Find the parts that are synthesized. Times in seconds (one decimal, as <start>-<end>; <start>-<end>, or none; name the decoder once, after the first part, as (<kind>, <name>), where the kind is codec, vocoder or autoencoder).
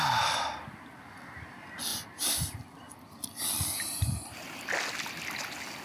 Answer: none